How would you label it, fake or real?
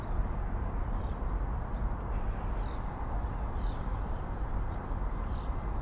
fake